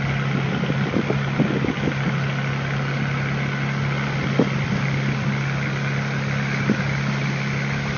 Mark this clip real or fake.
real